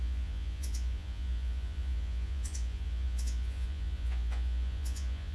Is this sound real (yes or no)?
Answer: no